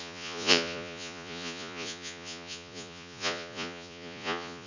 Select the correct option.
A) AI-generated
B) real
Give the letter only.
A